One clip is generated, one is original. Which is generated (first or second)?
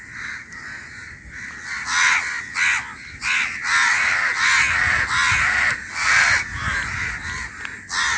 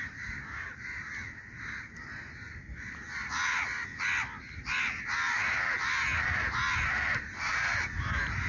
second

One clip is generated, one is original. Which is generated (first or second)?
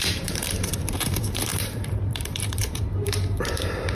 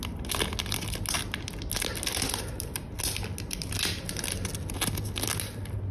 first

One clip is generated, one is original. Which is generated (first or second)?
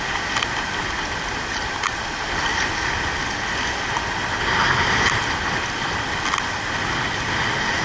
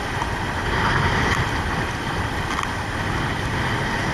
second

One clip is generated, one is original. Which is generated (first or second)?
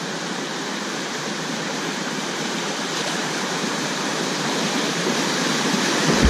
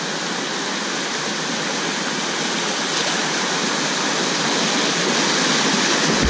first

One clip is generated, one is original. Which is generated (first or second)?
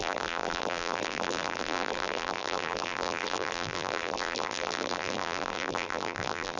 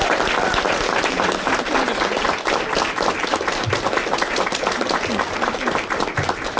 first